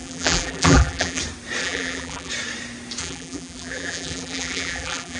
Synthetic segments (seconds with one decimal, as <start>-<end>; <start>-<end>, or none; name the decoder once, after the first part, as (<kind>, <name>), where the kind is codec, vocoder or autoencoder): 0.0-1.2 (vocoder, BigVGAN v2); 1.6-2.3; 3.0-5.2